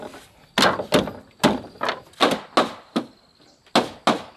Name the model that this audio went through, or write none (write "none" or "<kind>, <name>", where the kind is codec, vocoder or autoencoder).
none